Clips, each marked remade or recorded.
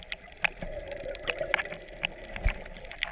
recorded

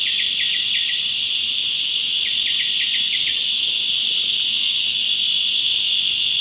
recorded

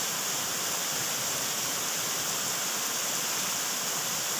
recorded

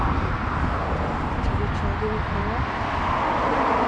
recorded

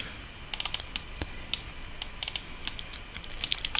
recorded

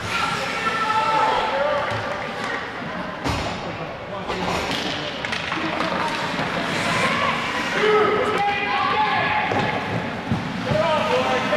recorded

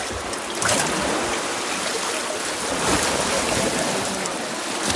recorded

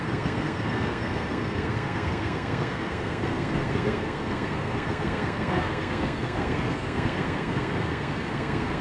remade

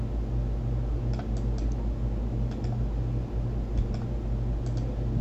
recorded